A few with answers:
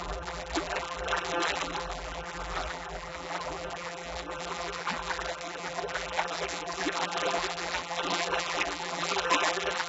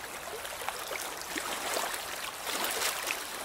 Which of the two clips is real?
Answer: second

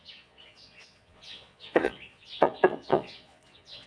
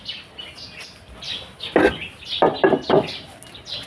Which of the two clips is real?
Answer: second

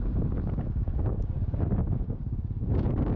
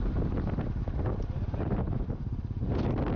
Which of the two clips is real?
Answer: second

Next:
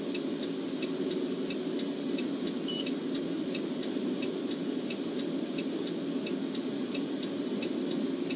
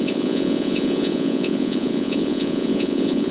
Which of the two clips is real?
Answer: first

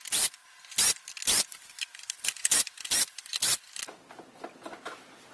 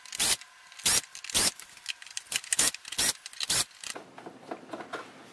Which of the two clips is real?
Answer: second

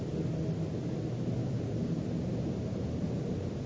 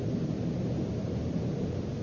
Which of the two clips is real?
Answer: first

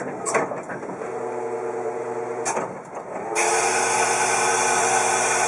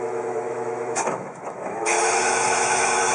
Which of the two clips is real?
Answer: first